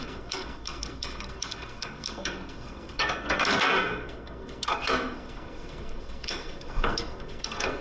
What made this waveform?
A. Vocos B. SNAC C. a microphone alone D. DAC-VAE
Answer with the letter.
B